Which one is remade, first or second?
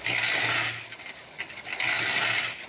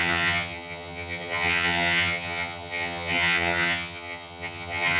second